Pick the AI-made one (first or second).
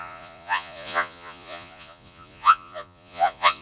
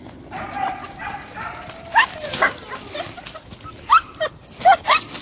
first